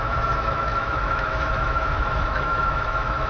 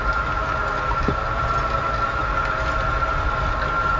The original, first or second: second